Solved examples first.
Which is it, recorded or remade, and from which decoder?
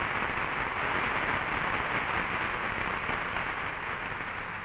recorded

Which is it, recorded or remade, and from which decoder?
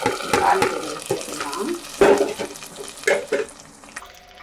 recorded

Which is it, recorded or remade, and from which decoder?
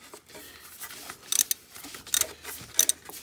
recorded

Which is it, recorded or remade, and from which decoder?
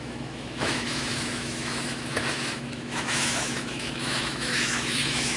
remade, autoencoder, DAC-VAE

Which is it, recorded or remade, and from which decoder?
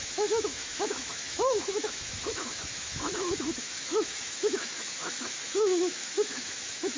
remade, autoencoder, DAC-VAE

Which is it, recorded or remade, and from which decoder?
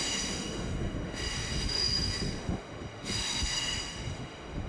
remade, autoencoder, DAC-VAE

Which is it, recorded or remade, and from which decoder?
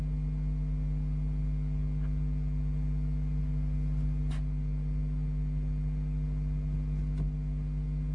recorded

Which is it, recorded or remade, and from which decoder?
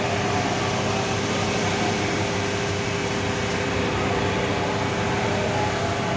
recorded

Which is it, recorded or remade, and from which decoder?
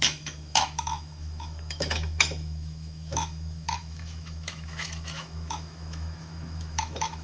remade, autoencoder, DAC-VAE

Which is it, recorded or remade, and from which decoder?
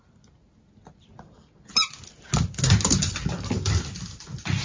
recorded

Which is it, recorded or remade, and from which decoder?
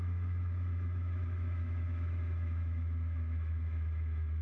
remade, autoencoder, DAC-VAE